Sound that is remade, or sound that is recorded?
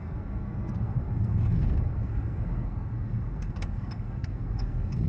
remade